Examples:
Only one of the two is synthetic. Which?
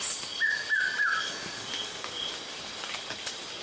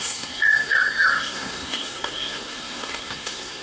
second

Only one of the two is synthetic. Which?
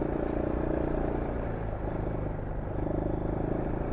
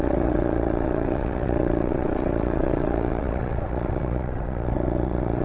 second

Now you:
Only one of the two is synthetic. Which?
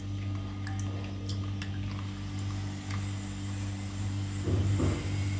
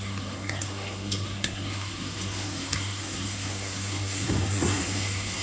second